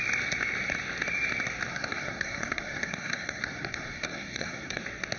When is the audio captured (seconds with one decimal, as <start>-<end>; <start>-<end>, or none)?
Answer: 0.0-1.7; 4.8-5.2